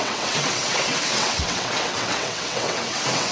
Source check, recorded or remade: remade